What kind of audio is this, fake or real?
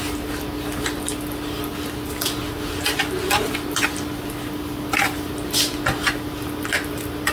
real